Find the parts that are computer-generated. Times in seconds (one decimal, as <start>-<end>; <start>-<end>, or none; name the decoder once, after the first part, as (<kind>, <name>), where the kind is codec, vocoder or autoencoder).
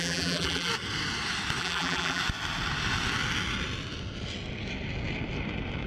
0.0-0.7 (vocoder, BigVGAN v2); 1.6-2.2